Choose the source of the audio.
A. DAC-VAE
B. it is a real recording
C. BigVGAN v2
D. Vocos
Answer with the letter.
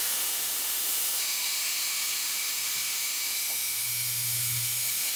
A